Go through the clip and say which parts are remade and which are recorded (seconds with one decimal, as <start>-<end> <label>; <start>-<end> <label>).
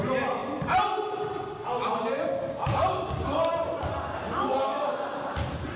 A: 0.0-5.8 recorded